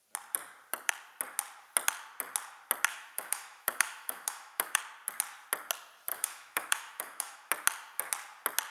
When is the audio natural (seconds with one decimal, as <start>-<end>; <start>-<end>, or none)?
0.0-2.9; 4.8-6.1; 7.5-8.7